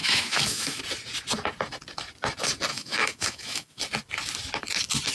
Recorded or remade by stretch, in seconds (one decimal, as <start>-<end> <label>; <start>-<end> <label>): 0.0-0.8 remade; 0.8-2.7 recorded; 2.7-3.8 remade; 3.8-5.1 recorded